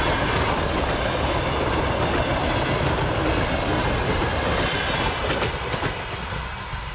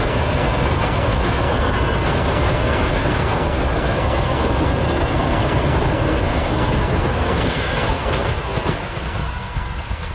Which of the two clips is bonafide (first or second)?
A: first